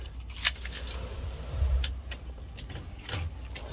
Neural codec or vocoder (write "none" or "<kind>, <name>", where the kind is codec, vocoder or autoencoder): none